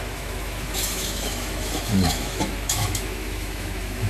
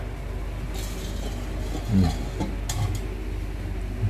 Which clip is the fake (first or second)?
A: first